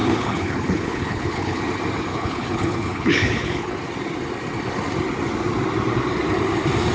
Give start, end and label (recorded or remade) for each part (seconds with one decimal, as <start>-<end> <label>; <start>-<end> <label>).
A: 0.0-1.6 remade; 1.6-2.1 recorded; 2.1-3.8 remade; 3.8-6.9 recorded